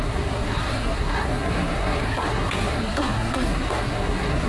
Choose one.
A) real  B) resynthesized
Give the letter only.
B